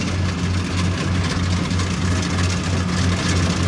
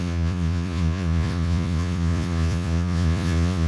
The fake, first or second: second